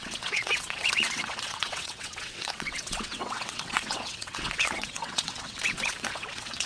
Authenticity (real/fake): fake